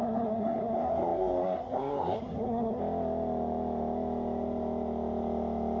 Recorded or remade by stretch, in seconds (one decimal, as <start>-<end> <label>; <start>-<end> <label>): 0.0-2.8 remade; 2.8-5.8 recorded